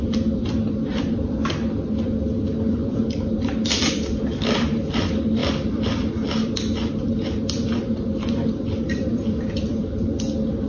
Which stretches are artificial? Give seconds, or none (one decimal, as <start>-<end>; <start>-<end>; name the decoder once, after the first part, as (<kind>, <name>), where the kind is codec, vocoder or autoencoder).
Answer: 0.0-1.4 (vocoder, BigVGAN v2); 2.7-10.7